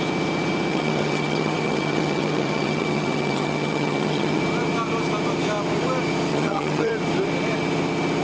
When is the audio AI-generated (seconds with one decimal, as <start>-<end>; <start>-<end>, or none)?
0.7-4.4; 6.3-6.9